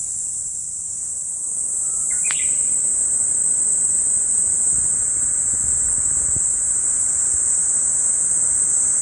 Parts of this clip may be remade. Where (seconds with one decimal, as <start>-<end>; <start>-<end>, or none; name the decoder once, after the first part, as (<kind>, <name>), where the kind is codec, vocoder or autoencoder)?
0.4-0.9 (vocoder, BigVGAN v2)